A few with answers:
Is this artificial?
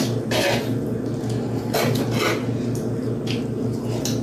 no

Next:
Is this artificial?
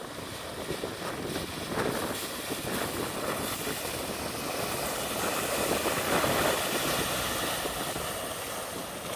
no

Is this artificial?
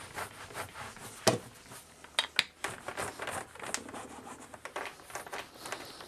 no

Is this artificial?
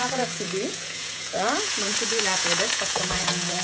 yes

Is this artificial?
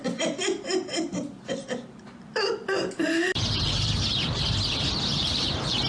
yes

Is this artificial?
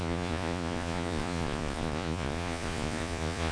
yes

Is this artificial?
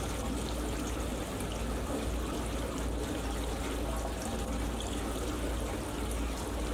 no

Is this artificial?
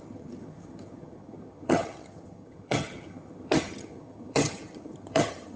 yes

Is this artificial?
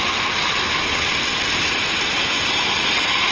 no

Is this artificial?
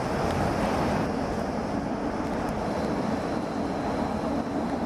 no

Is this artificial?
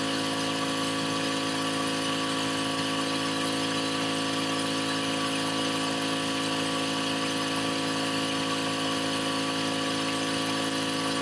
no